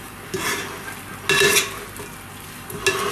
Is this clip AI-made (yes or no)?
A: no